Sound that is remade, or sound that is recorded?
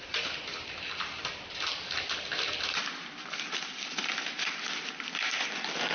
recorded